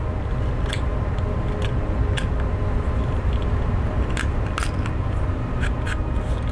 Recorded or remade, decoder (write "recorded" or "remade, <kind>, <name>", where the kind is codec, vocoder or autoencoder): recorded